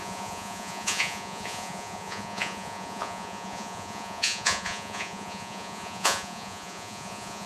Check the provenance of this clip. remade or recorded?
remade